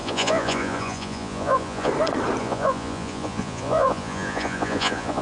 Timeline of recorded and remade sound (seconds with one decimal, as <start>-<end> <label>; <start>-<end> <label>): 0.0-1.9 remade; 1.9-2.4 recorded; 2.4-5.2 remade